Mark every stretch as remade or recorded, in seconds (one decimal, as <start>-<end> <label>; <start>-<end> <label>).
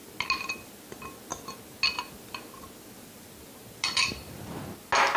0.0-5.2 recorded